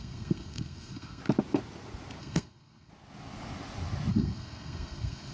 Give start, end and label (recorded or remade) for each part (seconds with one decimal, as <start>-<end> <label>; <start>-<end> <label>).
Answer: 0.0-1.2 remade; 1.2-2.2 recorded; 2.2-2.9 remade; 2.9-4.1 recorded; 4.1-5.3 remade